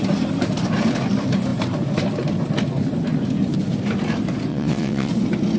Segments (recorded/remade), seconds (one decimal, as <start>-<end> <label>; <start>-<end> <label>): 0.0-4.5 recorded; 4.5-5.1 remade; 5.1-5.6 recorded